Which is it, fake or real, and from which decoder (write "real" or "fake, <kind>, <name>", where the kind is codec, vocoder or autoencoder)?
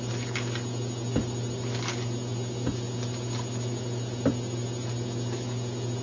real